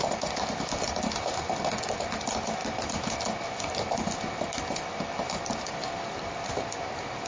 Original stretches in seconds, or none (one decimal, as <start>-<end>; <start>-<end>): 0.0-7.3